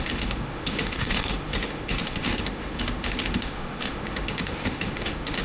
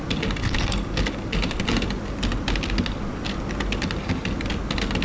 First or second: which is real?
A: second